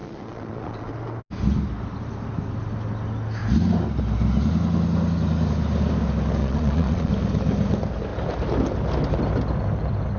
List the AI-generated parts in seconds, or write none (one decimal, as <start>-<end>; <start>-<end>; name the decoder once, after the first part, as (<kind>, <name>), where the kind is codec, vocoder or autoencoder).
0.0-0.9 (vocoder, Vocos); 6.4-7.1